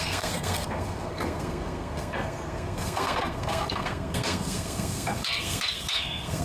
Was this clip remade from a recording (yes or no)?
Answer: yes